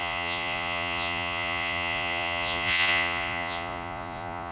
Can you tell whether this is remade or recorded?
remade